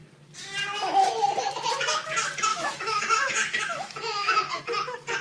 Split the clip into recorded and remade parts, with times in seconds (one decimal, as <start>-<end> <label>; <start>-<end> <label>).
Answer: 0.0-2.5 recorded; 2.5-4.6 remade; 4.6-5.2 recorded